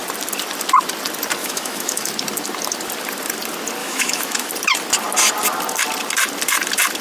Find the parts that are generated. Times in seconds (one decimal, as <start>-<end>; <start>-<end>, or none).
1.4-2.1; 3.8-4.5